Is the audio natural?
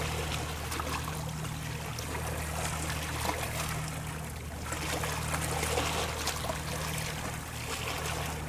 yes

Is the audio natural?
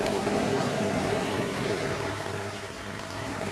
no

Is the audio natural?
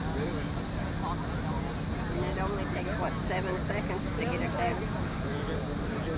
yes